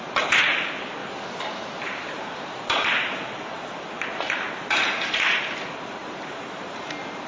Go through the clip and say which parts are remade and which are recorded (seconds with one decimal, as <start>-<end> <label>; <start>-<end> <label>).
0.0-1.0 recorded; 1.0-5.4 remade; 5.4-6.0 recorded; 6.0-6.6 remade; 6.6-7.3 recorded